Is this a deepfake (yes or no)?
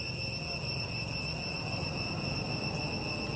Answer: no